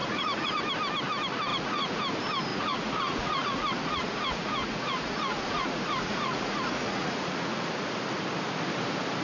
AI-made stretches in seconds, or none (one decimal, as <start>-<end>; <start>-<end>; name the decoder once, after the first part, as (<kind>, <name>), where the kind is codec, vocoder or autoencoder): 0.0-0.6 (vocoder, Vocos); 1.5-2.0; 2.5-7.7